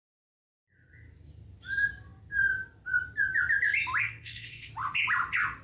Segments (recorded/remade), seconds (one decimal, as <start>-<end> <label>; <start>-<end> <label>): 0.0-4.0 recorded; 4.0-4.7 remade; 4.7-5.6 recorded